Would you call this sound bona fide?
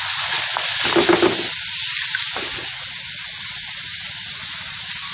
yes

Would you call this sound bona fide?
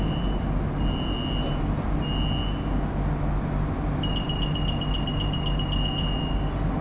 yes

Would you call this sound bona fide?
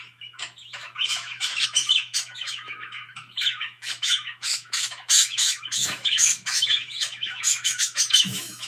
no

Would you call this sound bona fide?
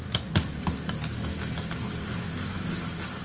yes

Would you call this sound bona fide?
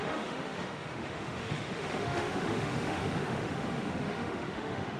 no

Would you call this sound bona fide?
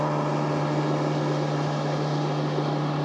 yes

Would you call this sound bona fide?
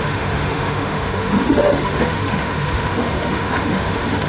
no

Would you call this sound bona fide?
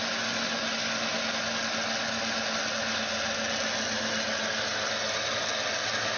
yes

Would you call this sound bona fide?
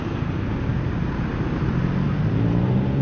yes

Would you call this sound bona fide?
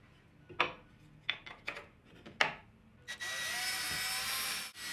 yes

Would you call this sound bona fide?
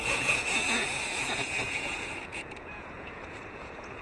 no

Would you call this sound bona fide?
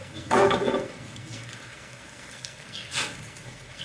no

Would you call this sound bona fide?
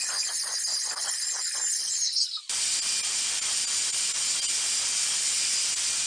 yes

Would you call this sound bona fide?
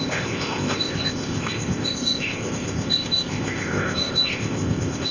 no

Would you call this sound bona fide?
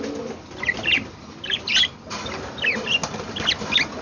yes